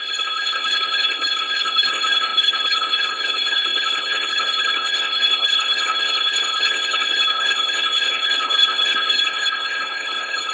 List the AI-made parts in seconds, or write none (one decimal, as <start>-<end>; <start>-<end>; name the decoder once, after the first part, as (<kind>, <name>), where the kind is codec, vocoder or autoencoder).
0.0-10.5 (codec, HILCodec)